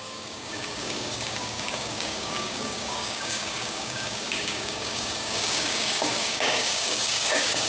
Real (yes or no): no